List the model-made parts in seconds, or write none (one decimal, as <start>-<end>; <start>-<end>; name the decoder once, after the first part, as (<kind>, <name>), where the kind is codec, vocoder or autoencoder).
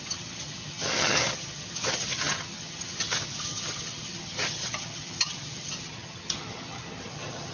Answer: 0.0-7.5 (vocoder, HiFi-GAN)